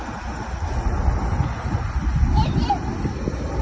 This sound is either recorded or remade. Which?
recorded